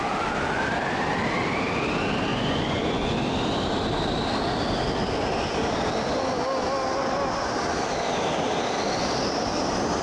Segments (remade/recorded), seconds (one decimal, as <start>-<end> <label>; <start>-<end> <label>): 0.0-2.3 recorded; 2.3-3.2 remade; 3.2-10.0 recorded